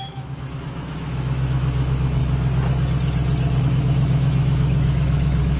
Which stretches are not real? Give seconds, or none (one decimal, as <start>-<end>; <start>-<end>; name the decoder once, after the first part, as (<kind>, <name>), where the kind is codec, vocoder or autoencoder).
0.0-2.2 (autoencoder, DAC-VAE); 3.6-5.6